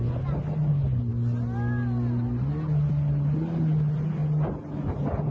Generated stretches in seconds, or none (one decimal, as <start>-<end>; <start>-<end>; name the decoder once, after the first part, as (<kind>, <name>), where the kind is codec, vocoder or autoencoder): none